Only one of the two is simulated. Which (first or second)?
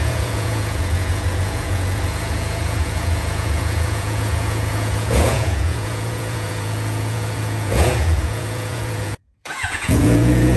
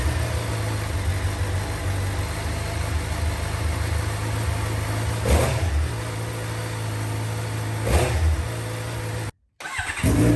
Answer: first